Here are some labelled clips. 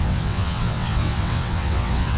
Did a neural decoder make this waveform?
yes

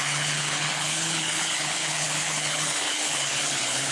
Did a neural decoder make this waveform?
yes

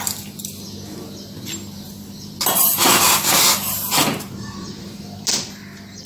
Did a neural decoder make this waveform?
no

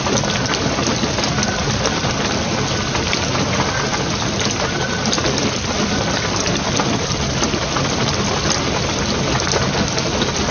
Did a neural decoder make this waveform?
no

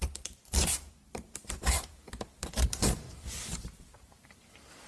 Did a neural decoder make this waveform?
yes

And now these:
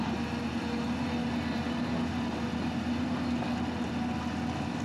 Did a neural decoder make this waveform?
no